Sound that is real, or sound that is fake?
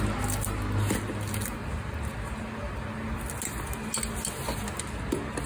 real